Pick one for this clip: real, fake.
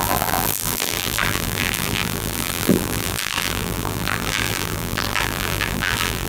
fake